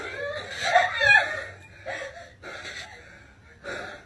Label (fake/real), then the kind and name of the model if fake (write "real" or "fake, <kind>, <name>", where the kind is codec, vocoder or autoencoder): real